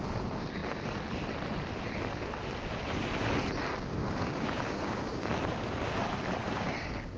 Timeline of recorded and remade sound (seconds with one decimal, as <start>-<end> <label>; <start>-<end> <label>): 0.0-3.9 recorded; 3.9-5.3 remade; 5.3-6.4 recorded; 6.4-7.2 remade